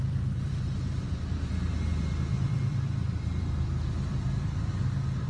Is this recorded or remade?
remade